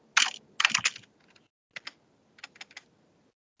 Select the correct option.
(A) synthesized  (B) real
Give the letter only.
B